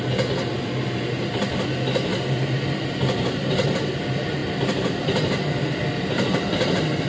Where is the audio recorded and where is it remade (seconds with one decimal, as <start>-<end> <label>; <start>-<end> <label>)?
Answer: 0.0-7.1 recorded